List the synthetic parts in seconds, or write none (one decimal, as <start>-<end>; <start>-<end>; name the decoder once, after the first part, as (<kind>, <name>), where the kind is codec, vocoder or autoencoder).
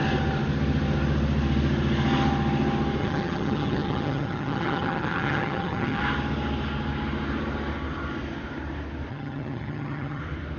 3.0-6.0 (vocoder, HiFi-GAN); 9.1-10.2